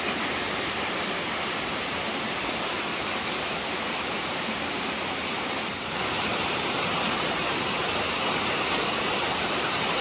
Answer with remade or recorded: remade